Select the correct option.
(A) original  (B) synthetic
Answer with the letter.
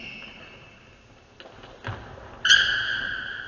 A